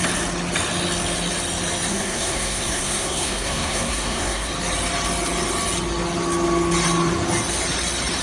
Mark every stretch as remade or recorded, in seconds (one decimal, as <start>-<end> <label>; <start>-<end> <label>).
0.0-1.9 recorded; 1.9-4.5 remade; 4.5-8.2 recorded